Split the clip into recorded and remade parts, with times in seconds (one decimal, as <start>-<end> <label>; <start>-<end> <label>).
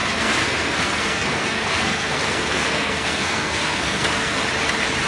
0.0-4.4 remade; 4.4-5.1 recorded